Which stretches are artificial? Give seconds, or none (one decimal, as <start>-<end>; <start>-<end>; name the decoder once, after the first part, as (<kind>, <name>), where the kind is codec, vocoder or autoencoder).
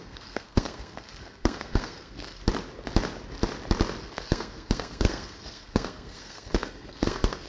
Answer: 0.0-2.4 (codec, SNAC); 4.0-7.5